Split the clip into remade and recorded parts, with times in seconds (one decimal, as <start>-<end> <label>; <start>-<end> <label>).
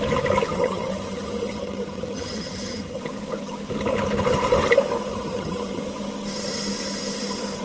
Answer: 0.0-0.5 recorded; 0.5-3.0 remade; 3.0-5.1 recorded; 5.1-5.8 remade; 5.8-7.6 recorded